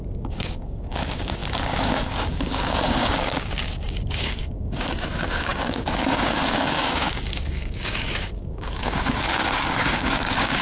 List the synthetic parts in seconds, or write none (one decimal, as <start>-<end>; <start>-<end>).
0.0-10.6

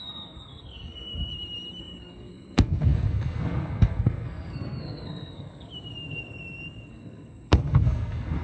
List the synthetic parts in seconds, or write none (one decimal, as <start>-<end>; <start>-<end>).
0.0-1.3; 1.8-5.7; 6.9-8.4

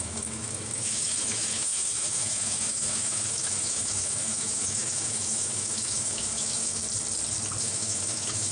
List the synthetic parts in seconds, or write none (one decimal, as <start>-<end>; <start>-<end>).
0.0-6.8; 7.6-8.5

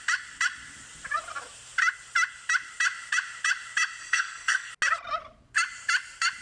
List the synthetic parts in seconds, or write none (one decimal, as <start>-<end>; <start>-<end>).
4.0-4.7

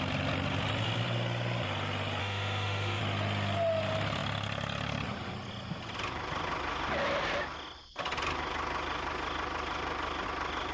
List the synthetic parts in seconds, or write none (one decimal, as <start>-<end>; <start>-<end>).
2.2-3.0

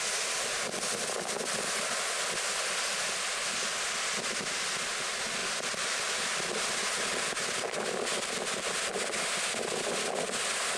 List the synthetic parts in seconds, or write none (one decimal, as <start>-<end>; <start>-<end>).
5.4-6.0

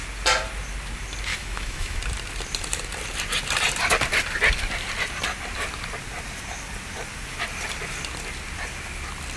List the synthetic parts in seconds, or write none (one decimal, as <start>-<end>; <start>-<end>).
1.3-2.0